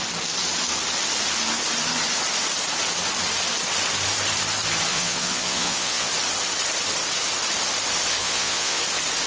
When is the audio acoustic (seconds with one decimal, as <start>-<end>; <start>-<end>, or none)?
0.0-4.9; 6.1-8.2; 8.8-9.3